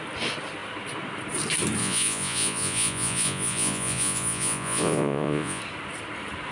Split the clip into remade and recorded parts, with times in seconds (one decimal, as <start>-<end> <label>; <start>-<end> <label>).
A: 0.0-1.8 recorded; 1.8-5.6 remade; 5.6-6.5 recorded